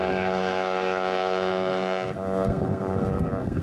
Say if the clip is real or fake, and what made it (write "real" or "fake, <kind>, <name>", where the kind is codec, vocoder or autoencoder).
fake, codec, SNAC